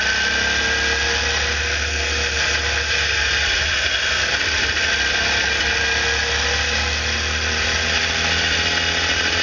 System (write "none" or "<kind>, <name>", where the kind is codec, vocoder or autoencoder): none